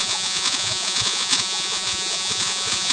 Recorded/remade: remade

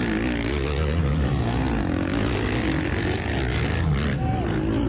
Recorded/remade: recorded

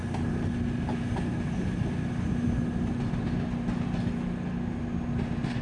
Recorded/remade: recorded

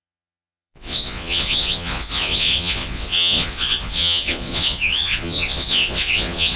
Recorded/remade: remade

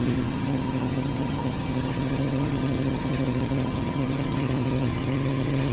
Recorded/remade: remade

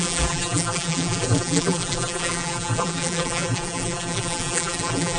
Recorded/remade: remade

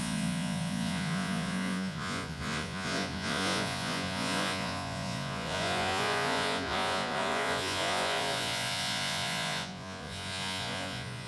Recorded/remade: remade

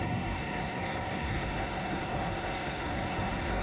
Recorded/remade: remade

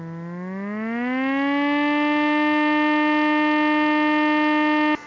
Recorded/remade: recorded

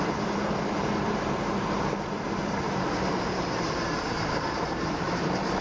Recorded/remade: remade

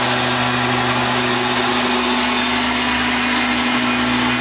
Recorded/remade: recorded